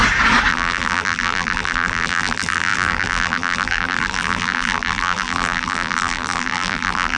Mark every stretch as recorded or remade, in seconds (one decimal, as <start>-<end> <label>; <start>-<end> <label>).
0.0-0.5 recorded; 0.5-7.2 remade